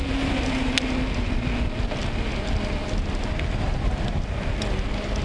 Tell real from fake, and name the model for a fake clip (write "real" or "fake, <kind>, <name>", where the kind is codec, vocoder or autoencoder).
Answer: real